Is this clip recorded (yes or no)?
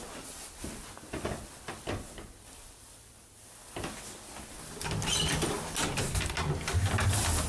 yes